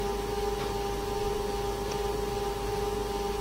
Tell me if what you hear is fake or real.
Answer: real